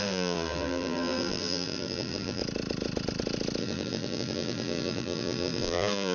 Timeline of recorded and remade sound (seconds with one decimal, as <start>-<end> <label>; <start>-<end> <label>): 0.0-2.4 remade; 2.4-3.6 recorded; 3.6-6.1 remade